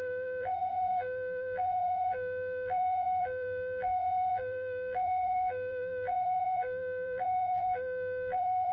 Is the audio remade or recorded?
remade